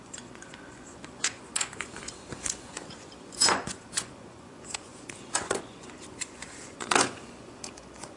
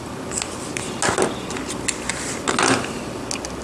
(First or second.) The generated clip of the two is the first